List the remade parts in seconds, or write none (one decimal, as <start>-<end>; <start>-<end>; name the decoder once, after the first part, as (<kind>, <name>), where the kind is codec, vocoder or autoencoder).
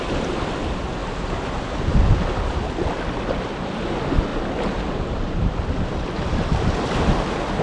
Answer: none